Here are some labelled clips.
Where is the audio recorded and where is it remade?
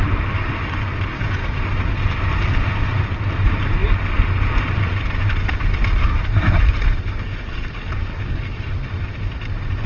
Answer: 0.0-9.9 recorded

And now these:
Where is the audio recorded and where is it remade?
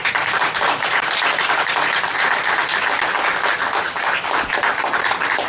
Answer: 0.0-1.7 remade; 1.7-5.5 recorded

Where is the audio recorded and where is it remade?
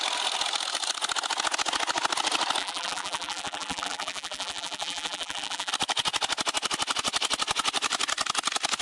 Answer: 0.0-2.6 recorded; 2.6-5.7 remade; 5.7-8.8 recorded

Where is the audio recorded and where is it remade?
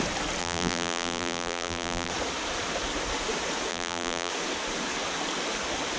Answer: 0.0-0.4 recorded; 0.4-2.1 remade; 2.1-3.7 recorded; 3.7-4.3 remade; 4.3-6.0 recorded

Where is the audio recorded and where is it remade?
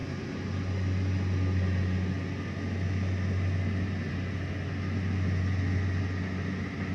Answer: 0.0-6.9 recorded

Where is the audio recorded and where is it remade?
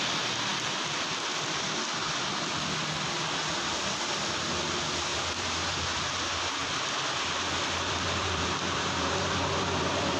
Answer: 0.0-0.5 recorded; 0.5-4.4 remade; 4.4-5.1 recorded; 5.1-5.8 remade; 5.8-6.6 recorded; 6.6-10.2 remade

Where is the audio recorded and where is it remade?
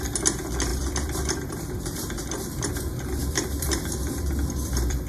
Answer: 0.0-0.7 recorded; 0.7-2.5 remade; 2.5-3.2 recorded; 3.2-5.1 remade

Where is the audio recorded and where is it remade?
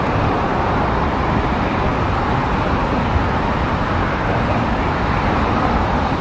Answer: 0.0-0.5 remade; 0.5-1.5 recorded; 1.5-1.9 remade; 1.9-5.6 recorded; 5.6-6.2 remade